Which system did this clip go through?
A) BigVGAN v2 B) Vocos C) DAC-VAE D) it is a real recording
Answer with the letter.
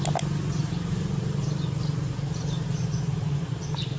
D